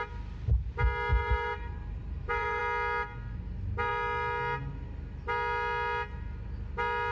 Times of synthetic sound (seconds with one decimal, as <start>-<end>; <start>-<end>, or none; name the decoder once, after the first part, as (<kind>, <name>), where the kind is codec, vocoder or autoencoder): 1.2-2.6 (vocoder, BigVGAN v2)